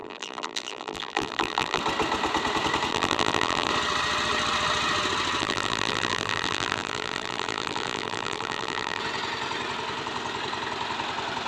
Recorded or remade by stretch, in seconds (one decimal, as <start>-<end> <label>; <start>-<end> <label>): 0.0-1.8 remade; 1.8-2.9 recorded; 2.9-3.7 remade; 3.7-5.4 recorded; 5.4-9.0 remade; 9.0-11.5 recorded